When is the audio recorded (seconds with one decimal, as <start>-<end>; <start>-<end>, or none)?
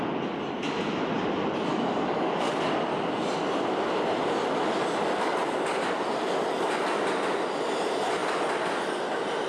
0.0-1.7; 2.5-9.5